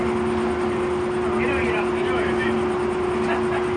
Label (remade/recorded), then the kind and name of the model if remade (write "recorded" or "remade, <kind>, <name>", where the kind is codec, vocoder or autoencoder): remade, vocoder, BigVGAN v2